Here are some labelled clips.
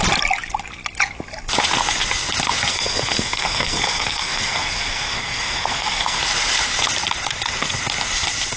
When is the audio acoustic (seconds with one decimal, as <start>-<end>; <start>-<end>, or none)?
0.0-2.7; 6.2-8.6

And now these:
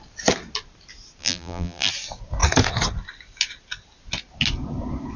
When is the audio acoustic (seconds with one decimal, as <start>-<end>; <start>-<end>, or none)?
0.0-1.2; 1.9-5.2

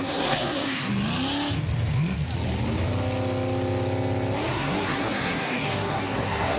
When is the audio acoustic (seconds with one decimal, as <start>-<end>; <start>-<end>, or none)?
0.9-4.5

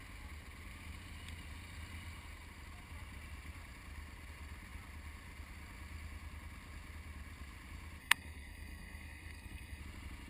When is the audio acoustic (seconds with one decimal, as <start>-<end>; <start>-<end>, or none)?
0.0-8.0; 9.8-10.3

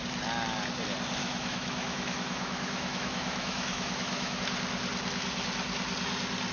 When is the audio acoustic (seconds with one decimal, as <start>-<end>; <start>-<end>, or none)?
0.0-1.2; 4.4-6.5

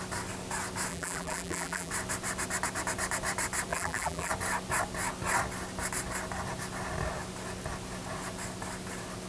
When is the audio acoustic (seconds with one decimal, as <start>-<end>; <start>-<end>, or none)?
0.0-0.9; 1.9-3.7; 4.3-9.3